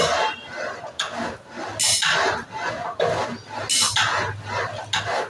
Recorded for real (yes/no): yes